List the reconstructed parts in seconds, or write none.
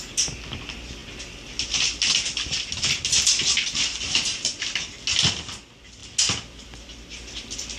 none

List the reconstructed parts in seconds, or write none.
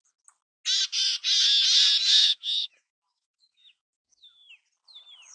2.2-4.5 (autoencoder, DAC-VAE)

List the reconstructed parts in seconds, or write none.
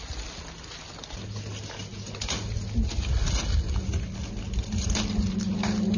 none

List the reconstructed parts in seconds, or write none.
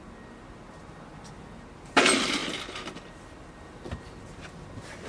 2.4-4.2 (vocoder, BigVGAN v2)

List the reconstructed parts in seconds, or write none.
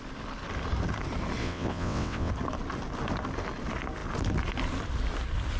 1.4-2.3 (vocoder, WaveNeXt)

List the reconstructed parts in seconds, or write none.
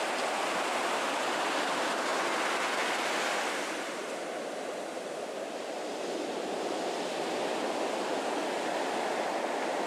none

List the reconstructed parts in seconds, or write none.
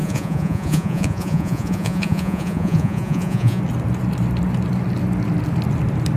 0.0-3.6 (vocoder, Vocos)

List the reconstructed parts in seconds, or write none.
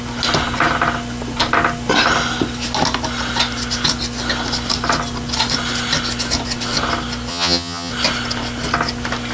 7.3-7.9 (vocoder, HiFi-GAN)